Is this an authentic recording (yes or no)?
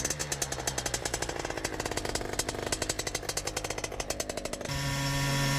yes